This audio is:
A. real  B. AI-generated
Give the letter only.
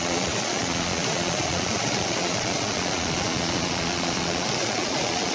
B